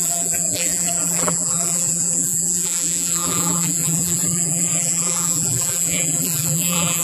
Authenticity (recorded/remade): remade